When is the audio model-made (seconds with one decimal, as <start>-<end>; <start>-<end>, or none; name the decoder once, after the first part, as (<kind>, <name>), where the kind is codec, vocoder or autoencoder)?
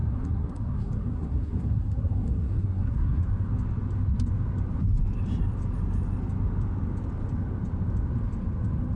0.0-3.2 (codec, SNAC)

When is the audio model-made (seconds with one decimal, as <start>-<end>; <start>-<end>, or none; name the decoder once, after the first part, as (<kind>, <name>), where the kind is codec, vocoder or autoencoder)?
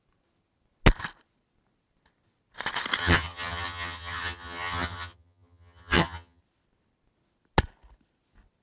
3.0-6.4 (vocoder, HiFi-GAN)